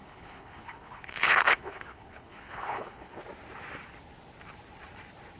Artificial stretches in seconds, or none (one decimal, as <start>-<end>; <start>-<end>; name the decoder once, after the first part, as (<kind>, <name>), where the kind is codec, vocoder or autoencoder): 0.0-3.2 (codec, HILCodec)

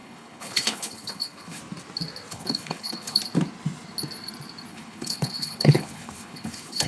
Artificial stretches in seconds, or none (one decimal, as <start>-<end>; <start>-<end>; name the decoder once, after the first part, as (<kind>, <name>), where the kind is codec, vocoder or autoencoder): 0.0-1.6 (codec, HILCodec); 2.3-3.2; 4.7-6.9

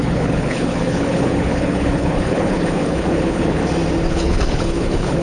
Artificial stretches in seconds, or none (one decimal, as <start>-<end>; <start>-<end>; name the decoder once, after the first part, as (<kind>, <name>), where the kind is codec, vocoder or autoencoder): 0.0-3.6 (codec, HILCodec); 4.1-5.2